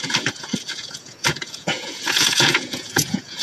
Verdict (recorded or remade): remade